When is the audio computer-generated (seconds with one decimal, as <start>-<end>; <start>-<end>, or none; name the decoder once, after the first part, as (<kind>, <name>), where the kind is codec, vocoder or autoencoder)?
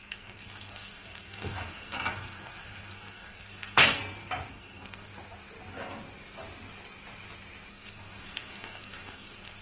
0.0-4.0 (codec, SNAC); 4.5-5.1; 7.7-9.6